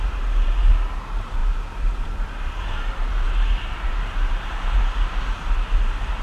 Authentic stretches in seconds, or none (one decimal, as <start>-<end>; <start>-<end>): none